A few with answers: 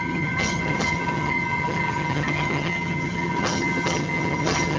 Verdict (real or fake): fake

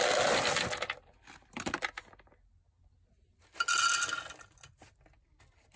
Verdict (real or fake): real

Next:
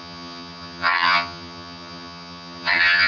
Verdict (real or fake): fake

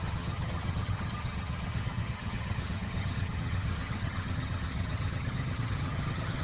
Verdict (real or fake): fake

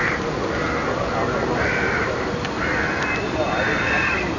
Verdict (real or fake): real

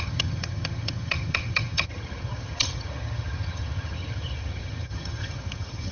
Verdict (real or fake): fake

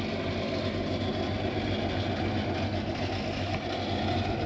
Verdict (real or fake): real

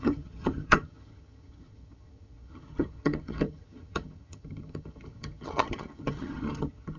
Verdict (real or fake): fake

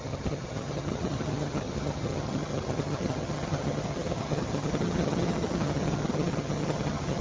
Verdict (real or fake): fake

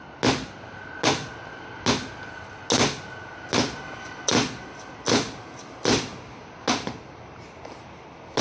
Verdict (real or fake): real